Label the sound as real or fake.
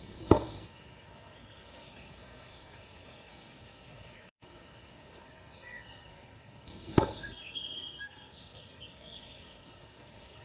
fake